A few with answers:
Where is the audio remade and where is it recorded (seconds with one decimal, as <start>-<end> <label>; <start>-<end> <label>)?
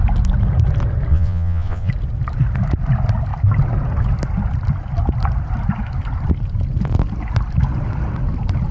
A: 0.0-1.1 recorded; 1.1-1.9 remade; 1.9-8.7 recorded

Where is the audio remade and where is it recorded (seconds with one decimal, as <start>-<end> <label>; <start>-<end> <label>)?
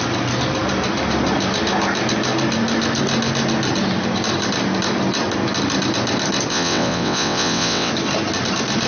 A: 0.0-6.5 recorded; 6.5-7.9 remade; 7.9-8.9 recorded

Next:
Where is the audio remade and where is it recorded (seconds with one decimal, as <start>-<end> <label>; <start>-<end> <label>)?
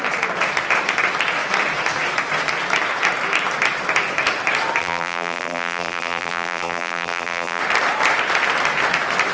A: 0.0-4.8 recorded; 4.8-7.6 remade; 7.6-9.3 recorded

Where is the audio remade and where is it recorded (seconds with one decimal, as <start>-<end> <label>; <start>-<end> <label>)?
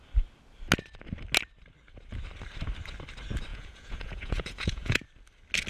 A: 0.0-3.5 recorded; 3.5-5.0 remade; 5.0-5.7 recorded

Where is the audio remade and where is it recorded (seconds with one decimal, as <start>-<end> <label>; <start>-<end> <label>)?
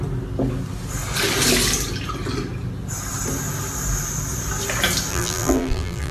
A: 0.0-5.1 recorded; 5.1-6.1 remade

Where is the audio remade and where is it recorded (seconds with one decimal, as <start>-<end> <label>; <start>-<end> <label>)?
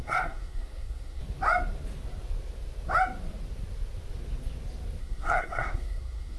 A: 0.0-1.2 remade; 1.2-5.0 recorded; 5.0-6.4 remade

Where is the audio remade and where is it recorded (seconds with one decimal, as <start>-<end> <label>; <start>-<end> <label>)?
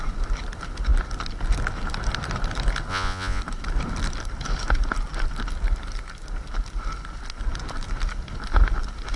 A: 0.0-2.9 recorded; 2.9-3.4 remade; 3.4-9.2 recorded